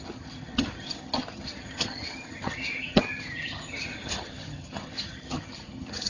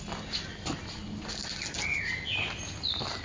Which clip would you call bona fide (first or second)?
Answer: second